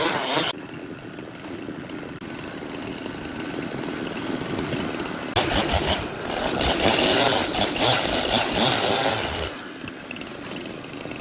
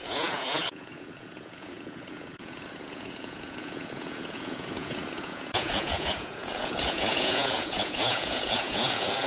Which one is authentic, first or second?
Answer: first